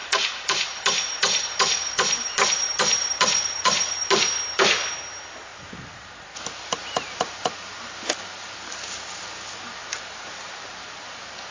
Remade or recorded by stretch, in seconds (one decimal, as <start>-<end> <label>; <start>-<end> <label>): 0.0-4.1 remade; 4.1-9.8 recorded; 9.8-10.6 remade; 10.6-11.5 recorded